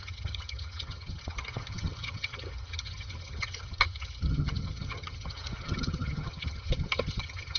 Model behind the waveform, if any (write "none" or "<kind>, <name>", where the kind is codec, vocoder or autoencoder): vocoder, HiFi-GAN